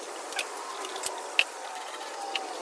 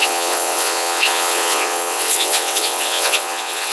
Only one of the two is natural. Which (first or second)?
first